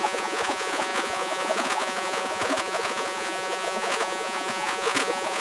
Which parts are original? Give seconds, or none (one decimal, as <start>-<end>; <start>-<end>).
none